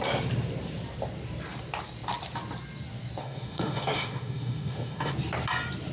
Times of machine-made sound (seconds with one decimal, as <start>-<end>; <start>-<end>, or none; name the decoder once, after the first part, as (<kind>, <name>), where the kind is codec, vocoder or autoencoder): 3.2-5.1 (autoencoder, DAC-VAE)